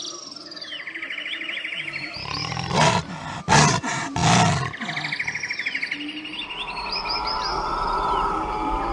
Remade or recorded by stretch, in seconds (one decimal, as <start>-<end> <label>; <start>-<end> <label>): 0.0-8.9 recorded